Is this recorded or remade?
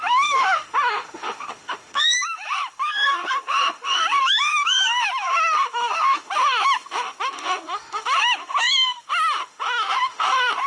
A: remade